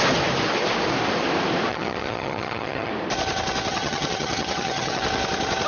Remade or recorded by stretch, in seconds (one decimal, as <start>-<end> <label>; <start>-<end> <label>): 0.0-1.7 recorded; 1.7-2.9 remade; 2.9-3.7 recorded; 3.7-5.0 remade; 5.0-5.7 recorded